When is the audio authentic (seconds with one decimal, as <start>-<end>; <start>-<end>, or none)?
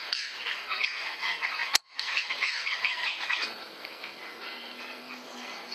none